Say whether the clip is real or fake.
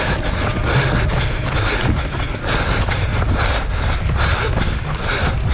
real